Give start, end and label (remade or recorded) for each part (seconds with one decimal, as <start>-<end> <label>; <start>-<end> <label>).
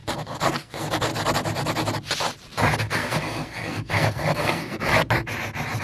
0.0-1.1 remade; 1.1-2.8 recorded; 2.8-4.9 remade; 4.9-5.8 recorded